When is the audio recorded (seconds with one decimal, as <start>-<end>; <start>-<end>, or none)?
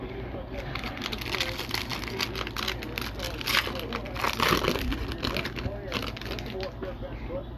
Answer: 0.0-7.6